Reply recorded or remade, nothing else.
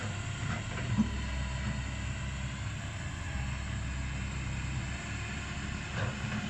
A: recorded